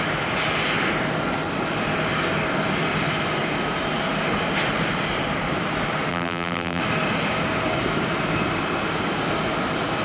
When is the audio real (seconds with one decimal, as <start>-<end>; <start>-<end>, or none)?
0.0-6.1; 6.8-10.0

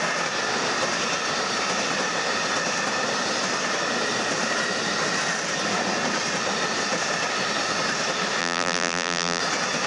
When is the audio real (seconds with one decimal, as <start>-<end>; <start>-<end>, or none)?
0.0-8.4; 9.4-9.9

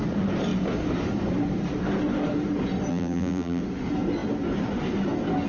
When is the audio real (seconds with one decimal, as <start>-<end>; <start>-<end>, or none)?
0.0-2.9; 3.6-5.5